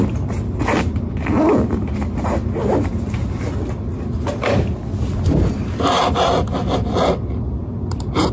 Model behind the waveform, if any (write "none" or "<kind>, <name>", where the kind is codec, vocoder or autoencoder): none